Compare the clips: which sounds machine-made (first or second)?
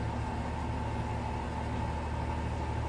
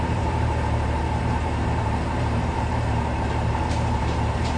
second